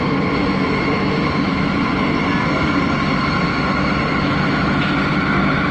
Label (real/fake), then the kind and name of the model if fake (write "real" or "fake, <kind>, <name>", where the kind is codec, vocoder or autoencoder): real